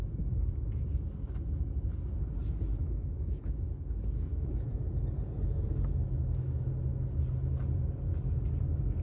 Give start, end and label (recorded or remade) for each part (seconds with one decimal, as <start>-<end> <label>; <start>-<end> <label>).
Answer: 0.0-2.8 recorded; 2.8-3.4 remade; 3.4-4.3 recorded; 4.3-4.8 remade; 4.8-6.0 recorded; 6.0-6.7 remade; 6.7-9.0 recorded